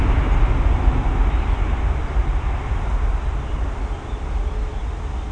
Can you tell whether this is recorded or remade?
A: recorded